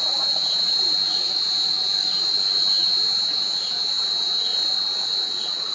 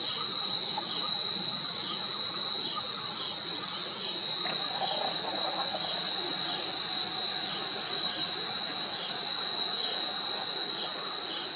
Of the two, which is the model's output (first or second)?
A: second